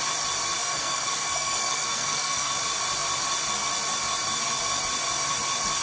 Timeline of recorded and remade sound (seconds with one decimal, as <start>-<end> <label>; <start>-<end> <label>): 0.0-0.6 recorded; 0.6-2.5 remade; 2.5-5.8 recorded